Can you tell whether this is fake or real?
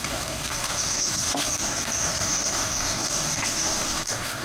fake